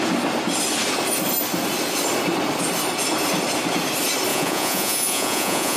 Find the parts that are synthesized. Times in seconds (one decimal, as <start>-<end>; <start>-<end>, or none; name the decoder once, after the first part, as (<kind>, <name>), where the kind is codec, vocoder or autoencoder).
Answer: 4.3-5.8 (vocoder, Vocos)